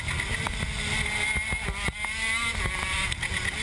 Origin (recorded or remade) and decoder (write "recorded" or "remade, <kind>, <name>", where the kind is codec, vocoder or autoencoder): recorded